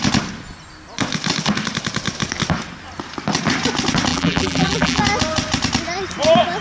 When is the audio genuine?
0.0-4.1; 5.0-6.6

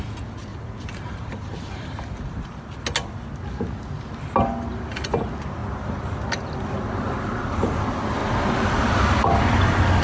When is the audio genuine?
0.0-0.5; 2.0-10.0

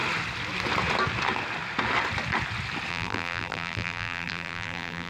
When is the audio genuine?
0.0-2.9

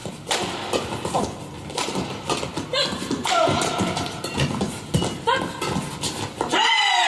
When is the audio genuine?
1.2-7.1

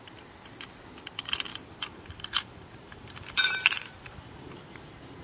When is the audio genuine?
0.0-1.5; 4.6-5.2